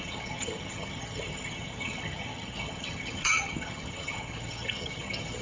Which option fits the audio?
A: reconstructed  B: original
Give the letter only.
A